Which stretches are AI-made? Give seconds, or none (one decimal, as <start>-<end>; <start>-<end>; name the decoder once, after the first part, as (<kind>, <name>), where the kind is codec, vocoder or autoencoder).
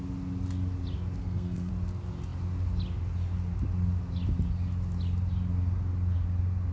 1.2-1.7 (codec, SNAC)